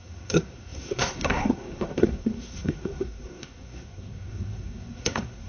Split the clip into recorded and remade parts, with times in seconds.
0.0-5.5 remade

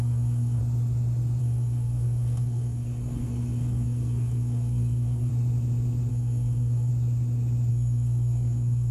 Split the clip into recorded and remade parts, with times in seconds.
0.0-0.6 remade; 0.6-1.4 recorded; 1.4-5.3 remade; 5.3-6.1 recorded; 6.1-6.9 remade; 6.9-7.7 recorded; 7.7-8.9 remade

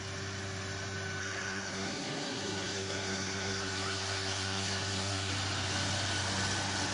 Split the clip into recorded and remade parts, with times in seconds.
0.0-1.2 recorded; 1.2-5.3 remade; 5.3-6.9 recorded

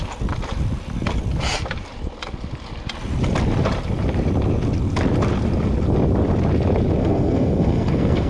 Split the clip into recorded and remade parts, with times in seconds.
0.0-7.0 recorded; 7.0-8.3 remade

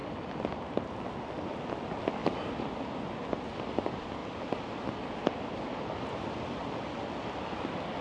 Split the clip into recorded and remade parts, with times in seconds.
0.0-8.0 recorded

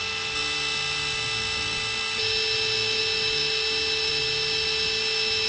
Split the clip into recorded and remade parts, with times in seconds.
0.0-5.5 recorded

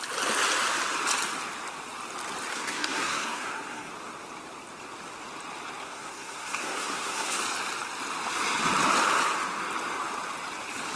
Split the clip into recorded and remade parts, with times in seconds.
0.0-2.5 recorded; 2.5-3.9 remade; 3.9-5.8 recorded; 5.8-7.4 remade; 7.4-11.0 recorded

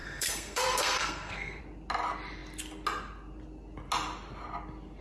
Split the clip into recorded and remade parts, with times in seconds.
0.0-1.6 remade; 1.6-5.0 recorded